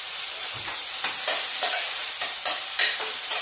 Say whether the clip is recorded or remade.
remade